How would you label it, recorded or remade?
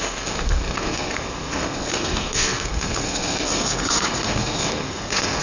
remade